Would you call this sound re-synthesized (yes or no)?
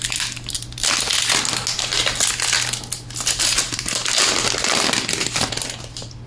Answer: no